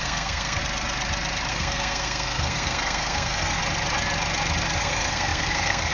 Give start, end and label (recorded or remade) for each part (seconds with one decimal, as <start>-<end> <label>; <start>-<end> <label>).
0.0-0.6 remade; 0.6-1.5 recorded; 1.5-3.6 remade; 3.6-4.8 recorded; 4.8-5.9 remade